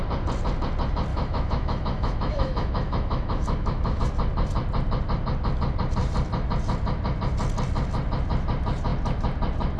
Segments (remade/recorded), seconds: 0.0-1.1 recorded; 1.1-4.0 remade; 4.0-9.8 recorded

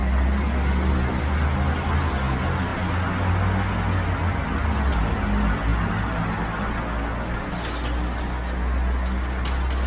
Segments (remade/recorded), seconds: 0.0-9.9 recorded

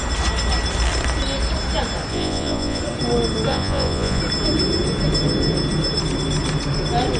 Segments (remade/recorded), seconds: 0.0-2.1 recorded; 2.1-2.8 remade; 2.8-3.5 recorded; 3.5-4.2 remade; 4.2-7.2 recorded